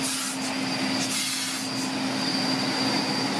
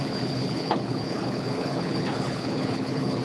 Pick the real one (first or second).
first